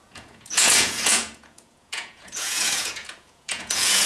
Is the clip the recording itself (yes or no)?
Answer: no